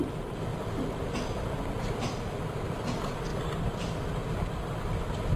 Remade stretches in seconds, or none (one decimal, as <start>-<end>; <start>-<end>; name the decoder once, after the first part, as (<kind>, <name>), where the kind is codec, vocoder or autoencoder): none